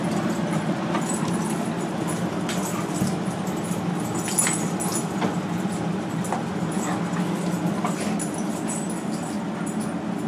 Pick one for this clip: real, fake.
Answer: real